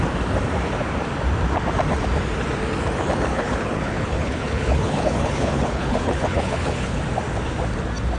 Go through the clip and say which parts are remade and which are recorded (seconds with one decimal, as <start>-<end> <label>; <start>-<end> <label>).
0.0-3.3 recorded; 3.3-7.0 remade; 7.0-8.2 recorded